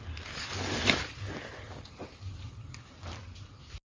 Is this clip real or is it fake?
real